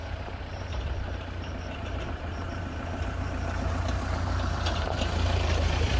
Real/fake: fake